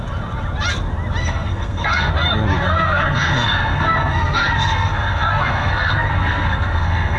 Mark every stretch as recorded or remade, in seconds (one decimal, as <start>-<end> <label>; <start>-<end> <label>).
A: 0.0-1.2 recorded; 1.2-2.1 remade; 2.1-2.6 recorded; 2.6-7.2 remade